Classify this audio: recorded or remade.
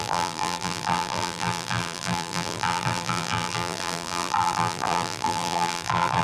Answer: remade